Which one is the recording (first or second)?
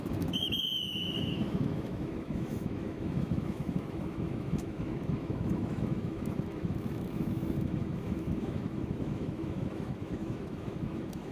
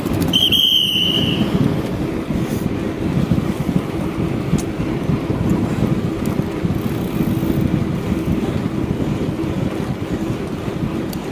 second